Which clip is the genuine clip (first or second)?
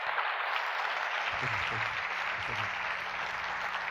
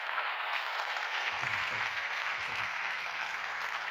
first